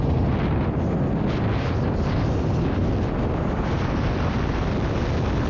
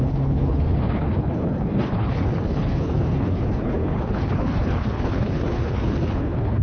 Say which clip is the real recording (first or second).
first